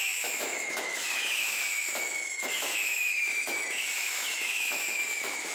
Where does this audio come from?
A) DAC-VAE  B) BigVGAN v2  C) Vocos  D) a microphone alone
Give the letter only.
A